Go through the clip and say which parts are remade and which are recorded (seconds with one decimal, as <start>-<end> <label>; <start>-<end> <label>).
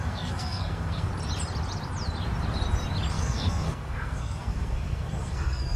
0.0-1.1 remade; 1.1-3.1 recorded; 3.1-5.8 remade